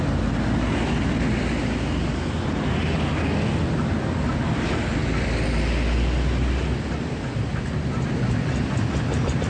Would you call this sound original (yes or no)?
yes